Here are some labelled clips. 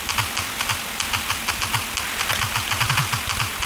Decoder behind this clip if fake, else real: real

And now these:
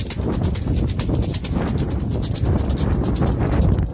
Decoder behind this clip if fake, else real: real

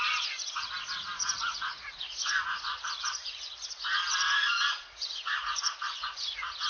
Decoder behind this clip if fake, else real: fake, vocoder, Vocos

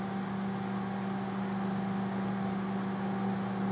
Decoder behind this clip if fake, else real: real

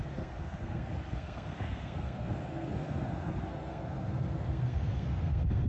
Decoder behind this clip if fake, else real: fake, codec, SNAC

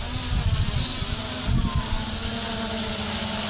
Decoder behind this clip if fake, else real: real